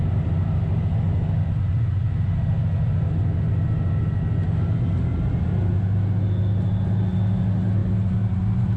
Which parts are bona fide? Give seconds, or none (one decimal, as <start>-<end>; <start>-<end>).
0.0-8.8